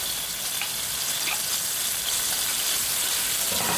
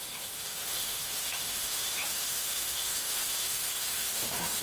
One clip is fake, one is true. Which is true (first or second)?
first